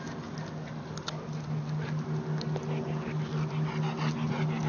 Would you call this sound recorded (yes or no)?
yes